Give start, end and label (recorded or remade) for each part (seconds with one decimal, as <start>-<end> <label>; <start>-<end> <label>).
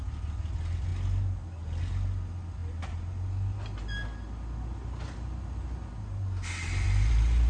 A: 0.0-7.5 recorded